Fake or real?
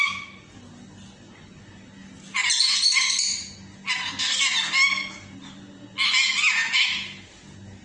real